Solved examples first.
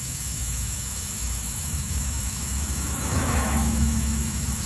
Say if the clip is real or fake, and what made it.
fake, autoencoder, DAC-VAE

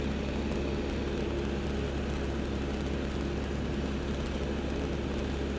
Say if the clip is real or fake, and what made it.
real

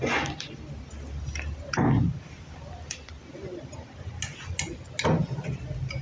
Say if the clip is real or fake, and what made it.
real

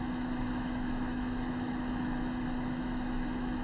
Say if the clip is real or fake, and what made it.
fake, autoencoder, DAC-VAE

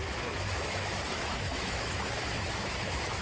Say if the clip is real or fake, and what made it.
fake, autoencoder, DAC-VAE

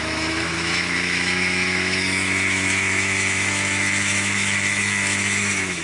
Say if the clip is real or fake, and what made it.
fake, autoencoder, DAC-VAE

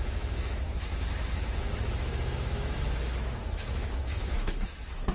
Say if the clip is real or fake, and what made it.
fake, autoencoder, DAC-VAE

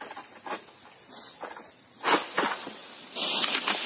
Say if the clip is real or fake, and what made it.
real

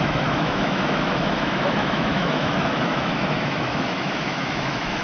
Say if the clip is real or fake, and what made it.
fake, autoencoder, DAC-VAE